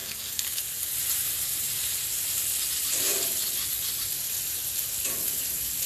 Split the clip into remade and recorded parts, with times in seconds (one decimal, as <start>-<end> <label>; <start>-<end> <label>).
0.0-0.6 remade; 0.6-5.9 recorded